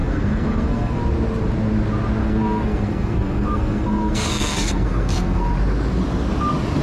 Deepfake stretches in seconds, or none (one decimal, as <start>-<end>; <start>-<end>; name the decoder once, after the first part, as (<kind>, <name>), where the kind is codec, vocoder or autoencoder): 0.0-1.0 (codec, SNAC); 2.2-5.5